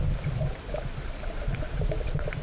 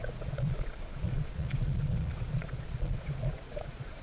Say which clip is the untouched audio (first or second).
first